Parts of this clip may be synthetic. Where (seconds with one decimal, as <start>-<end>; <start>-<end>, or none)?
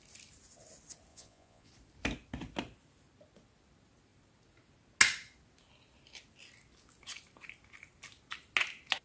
1.1-1.7